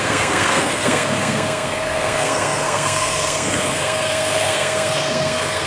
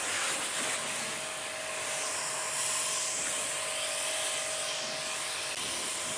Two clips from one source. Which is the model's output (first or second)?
first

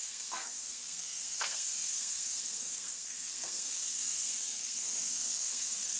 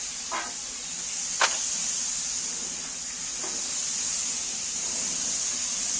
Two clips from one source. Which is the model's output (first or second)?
first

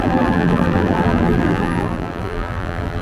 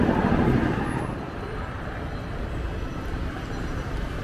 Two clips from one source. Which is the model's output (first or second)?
first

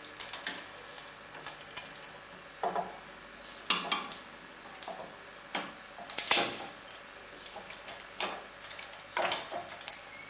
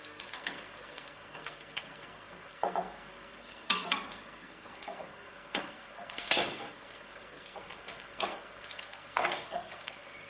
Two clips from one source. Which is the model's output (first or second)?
second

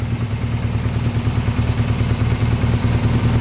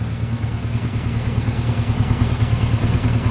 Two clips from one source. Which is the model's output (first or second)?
second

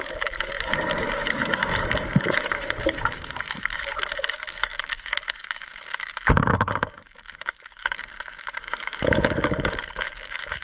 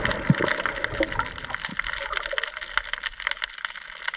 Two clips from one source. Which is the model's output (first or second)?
first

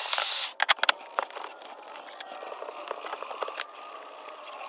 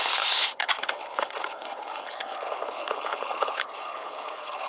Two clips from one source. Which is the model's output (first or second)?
second